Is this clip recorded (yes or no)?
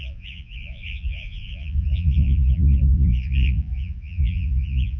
no